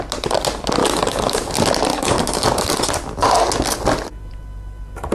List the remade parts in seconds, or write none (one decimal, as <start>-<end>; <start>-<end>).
0.8-1.5; 1.9-2.7